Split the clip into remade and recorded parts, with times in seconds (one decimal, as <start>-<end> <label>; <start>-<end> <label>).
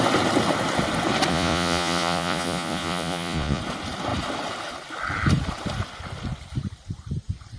0.0-1.3 recorded; 1.3-3.6 remade; 3.6-7.6 recorded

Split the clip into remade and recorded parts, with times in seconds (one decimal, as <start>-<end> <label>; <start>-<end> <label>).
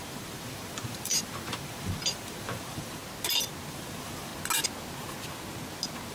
0.0-3.0 remade; 3.0-3.7 recorded; 3.7-4.3 remade; 4.3-6.1 recorded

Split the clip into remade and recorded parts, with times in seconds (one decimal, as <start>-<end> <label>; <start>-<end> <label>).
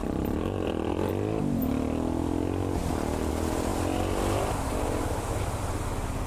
0.0-1.1 remade; 1.1-6.3 recorded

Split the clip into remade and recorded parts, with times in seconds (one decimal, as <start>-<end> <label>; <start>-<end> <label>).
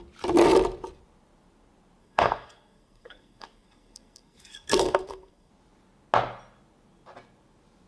0.0-2.0 recorded; 2.0-5.5 remade; 5.5-7.9 recorded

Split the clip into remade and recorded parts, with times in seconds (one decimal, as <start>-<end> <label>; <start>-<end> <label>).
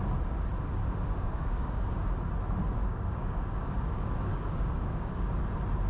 0.0-0.8 recorded; 0.8-1.9 remade; 1.9-2.8 recorded; 2.8-5.3 remade; 5.3-5.9 recorded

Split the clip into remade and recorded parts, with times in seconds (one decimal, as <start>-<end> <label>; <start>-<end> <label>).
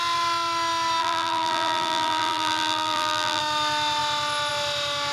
0.0-1.0 recorded; 1.0-3.4 remade; 3.4-5.1 recorded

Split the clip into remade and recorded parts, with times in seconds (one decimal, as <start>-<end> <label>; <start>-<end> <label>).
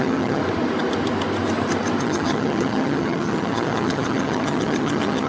0.0-0.4 remade; 0.4-2.0 recorded; 2.0-5.3 remade